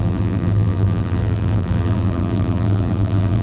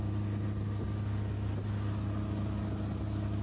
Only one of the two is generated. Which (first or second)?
first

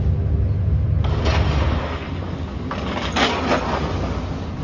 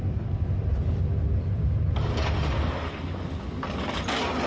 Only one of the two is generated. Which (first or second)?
second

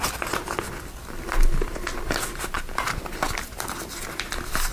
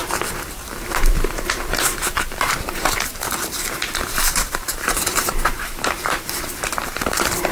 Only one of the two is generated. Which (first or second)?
second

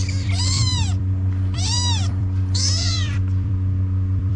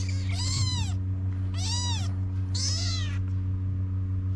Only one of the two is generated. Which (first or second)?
first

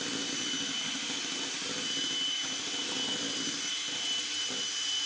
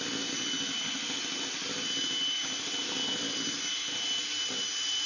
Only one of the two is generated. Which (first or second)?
first